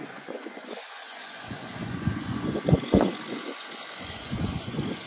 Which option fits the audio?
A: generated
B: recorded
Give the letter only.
A